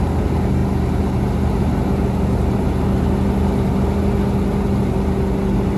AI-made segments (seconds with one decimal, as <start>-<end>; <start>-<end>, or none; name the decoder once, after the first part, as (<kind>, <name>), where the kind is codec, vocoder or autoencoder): none